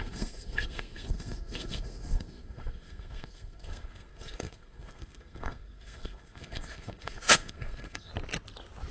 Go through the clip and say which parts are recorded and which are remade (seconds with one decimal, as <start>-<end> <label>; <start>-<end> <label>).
0.0-8.1 remade; 8.1-8.9 recorded